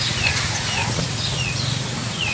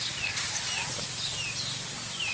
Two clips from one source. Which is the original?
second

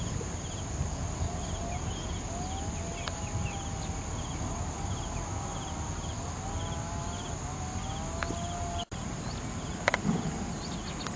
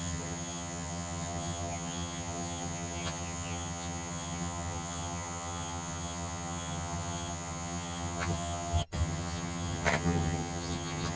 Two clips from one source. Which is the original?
first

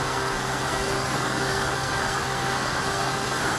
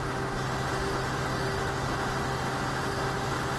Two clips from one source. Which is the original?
second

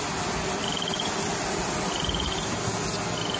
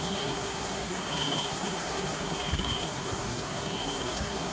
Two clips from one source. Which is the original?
first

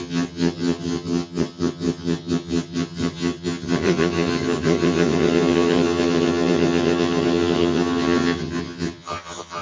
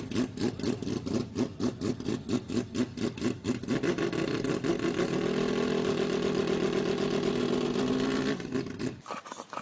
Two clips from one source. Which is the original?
second